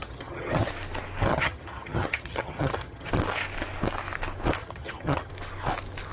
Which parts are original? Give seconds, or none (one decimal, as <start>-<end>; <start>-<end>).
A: 0.7-1.3; 3.1-4.6; 5.3-6.1